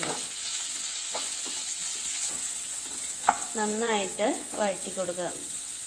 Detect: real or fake fake